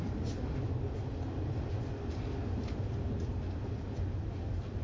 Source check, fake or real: real